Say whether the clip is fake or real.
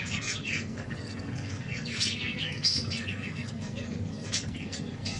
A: fake